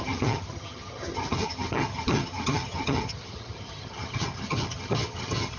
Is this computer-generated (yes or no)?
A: yes